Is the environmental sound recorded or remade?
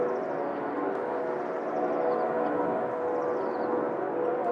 recorded